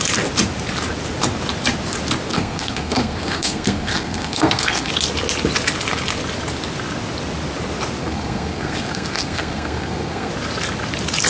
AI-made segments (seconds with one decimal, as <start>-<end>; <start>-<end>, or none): 2.3-4.9; 8.0-10.3